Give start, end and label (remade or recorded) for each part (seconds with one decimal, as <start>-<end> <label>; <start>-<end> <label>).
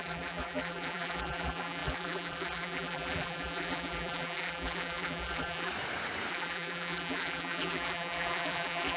0.0-5.7 remade; 5.7-6.3 recorded; 6.3-9.0 remade